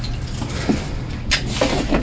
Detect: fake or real real